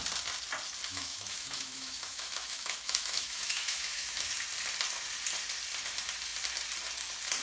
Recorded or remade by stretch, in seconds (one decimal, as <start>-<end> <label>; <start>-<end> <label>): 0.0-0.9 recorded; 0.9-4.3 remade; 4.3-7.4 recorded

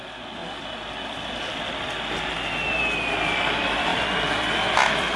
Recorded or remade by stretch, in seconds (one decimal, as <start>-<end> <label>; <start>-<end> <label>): 0.0-5.2 recorded

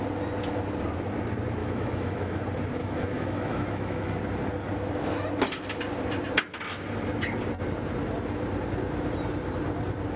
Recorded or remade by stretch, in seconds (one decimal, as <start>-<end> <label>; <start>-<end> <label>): 0.0-1.6 recorded; 1.6-2.4 remade; 2.4-2.8 recorded; 2.8-4.2 remade; 4.2-10.2 recorded

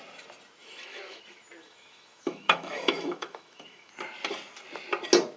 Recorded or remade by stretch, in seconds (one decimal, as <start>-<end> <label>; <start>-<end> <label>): 0.0-0.6 recorded; 0.6-1.2 remade; 1.2-1.6 recorded; 1.6-3.9 remade; 3.9-5.4 recorded

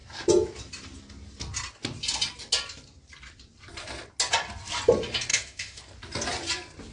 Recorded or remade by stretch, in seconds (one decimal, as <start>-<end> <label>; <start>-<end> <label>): 0.0-5.3 recorded; 5.3-5.8 remade; 5.8-6.9 recorded

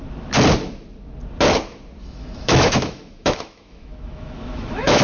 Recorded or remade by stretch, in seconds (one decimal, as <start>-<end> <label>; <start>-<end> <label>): 0.0-2.0 recorded; 2.0-5.0 remade